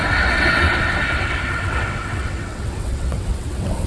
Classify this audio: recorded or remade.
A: remade